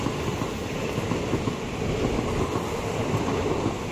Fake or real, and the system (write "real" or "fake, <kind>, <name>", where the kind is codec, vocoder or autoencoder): real